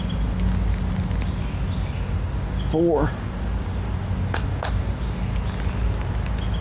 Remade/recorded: recorded